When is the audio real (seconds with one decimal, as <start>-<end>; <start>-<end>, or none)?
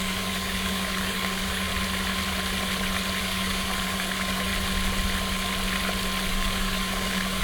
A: 1.7-3.2; 4.5-6.3